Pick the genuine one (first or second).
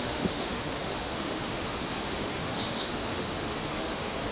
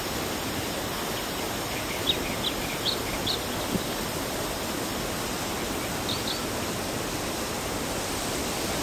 second